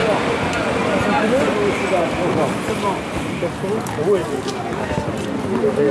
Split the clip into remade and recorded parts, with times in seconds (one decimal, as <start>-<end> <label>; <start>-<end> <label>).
0.0-5.9 recorded